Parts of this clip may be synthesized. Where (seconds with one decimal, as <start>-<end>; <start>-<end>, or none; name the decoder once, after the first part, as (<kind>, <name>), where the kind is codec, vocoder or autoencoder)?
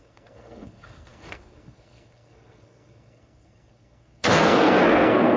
0.0-5.4 (codec, SNAC)